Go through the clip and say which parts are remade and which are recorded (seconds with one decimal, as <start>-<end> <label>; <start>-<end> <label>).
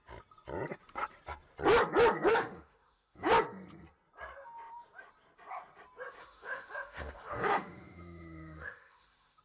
0.0-2.3 recorded; 2.3-3.3 remade; 3.3-6.2 recorded; 6.2-9.4 remade